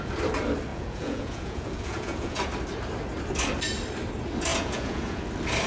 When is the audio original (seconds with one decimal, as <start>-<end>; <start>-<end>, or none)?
0.0-0.7; 2.5-4.5; 5.2-5.7